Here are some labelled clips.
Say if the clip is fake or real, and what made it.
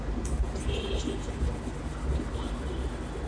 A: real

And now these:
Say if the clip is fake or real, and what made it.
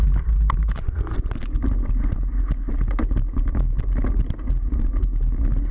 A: real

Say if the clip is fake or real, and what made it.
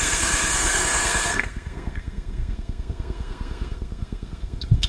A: fake, codec, SNAC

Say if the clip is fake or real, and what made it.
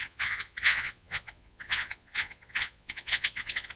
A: fake, vocoder, Vocos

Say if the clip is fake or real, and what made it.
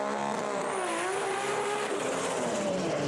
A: fake, vocoder, BigVGAN v2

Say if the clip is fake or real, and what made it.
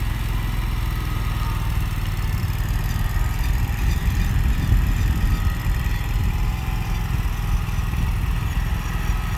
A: real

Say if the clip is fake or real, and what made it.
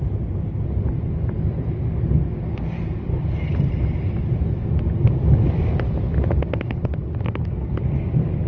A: real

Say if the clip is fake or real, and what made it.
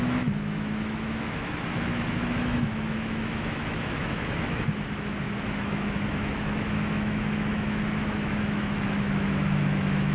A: fake, autoencoder, DAC-VAE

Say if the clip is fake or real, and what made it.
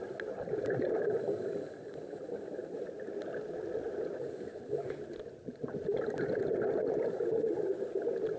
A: real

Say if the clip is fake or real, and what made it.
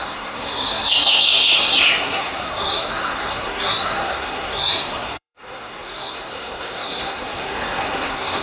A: fake, codec, SNAC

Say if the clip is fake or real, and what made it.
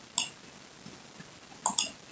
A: real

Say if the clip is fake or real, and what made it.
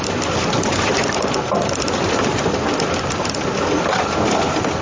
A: real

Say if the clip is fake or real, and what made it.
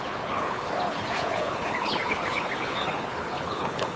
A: fake, codec, HILCodec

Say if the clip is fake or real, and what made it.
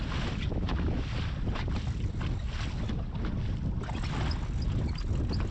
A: real